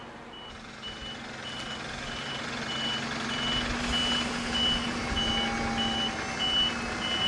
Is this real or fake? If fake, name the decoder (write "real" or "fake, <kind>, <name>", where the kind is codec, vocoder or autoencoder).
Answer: real